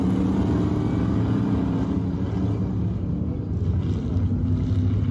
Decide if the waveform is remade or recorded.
recorded